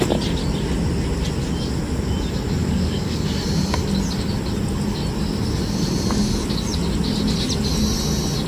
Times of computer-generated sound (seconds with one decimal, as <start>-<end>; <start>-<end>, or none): 2.6-3.2